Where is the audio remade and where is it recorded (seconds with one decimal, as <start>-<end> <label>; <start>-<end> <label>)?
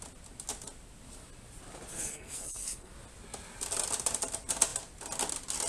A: 0.0-1.9 recorded; 1.9-2.9 remade; 2.9-5.7 recorded